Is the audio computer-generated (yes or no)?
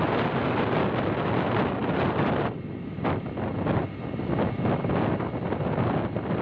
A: no